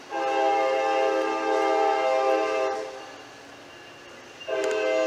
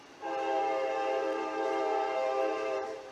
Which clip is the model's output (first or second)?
second